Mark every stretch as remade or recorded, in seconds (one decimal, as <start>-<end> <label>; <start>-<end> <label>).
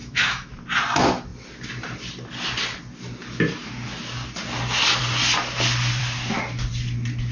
0.0-0.5 remade; 0.5-7.3 recorded